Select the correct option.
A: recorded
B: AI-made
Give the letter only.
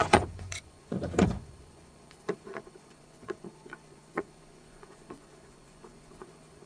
B